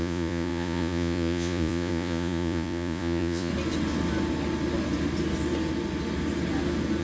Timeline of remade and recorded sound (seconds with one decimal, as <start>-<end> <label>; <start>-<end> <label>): 0.0-3.5 remade; 3.5-7.0 recorded